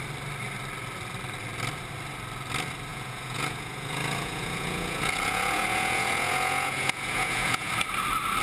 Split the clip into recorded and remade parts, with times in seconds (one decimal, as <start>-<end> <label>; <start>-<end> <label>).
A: 0.0-2.9 recorded; 2.9-7.7 remade; 7.7-8.4 recorded